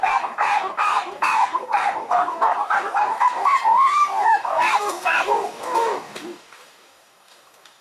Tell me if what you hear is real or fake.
fake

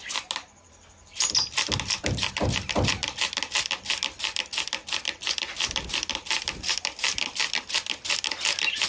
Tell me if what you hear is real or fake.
real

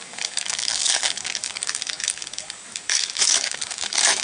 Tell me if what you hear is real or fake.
fake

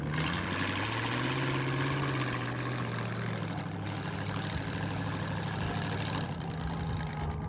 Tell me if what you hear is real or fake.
real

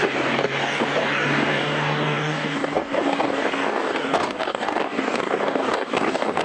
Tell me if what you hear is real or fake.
fake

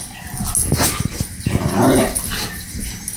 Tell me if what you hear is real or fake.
real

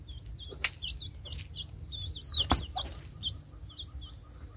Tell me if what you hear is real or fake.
real